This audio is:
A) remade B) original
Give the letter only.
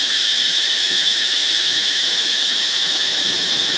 A